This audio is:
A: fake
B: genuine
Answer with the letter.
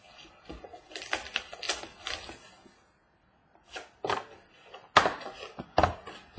B